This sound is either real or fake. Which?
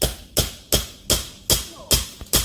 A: real